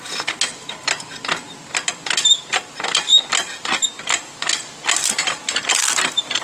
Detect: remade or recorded recorded